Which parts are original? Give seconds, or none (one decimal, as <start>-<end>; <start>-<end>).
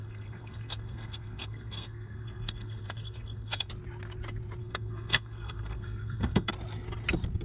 3.7-4.6; 6.5-7.4